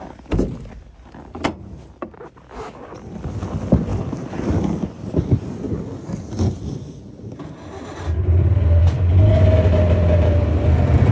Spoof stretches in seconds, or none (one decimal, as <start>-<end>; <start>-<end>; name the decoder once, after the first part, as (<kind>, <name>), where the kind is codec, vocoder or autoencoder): none